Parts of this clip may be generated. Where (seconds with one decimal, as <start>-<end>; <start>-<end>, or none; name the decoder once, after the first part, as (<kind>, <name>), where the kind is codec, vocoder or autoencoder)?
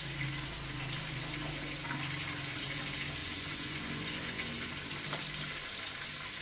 3.2-4.7 (vocoder, Vocos)